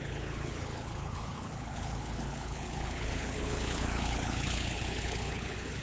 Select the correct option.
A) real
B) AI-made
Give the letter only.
B